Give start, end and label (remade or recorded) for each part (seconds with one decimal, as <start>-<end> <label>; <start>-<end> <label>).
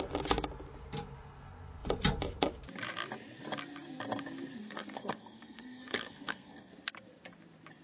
0.0-4.6 recorded; 4.6-6.7 remade; 6.7-7.8 recorded